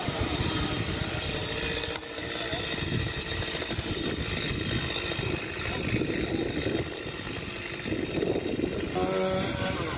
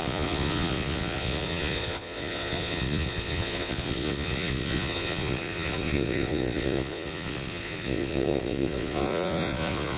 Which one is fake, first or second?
second